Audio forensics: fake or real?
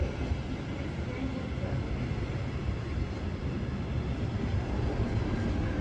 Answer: real